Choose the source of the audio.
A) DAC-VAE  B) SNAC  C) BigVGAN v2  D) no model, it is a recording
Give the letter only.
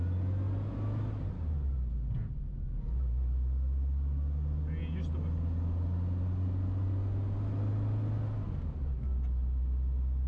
D